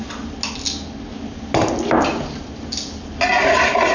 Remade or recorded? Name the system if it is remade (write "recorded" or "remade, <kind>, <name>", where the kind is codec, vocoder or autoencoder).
recorded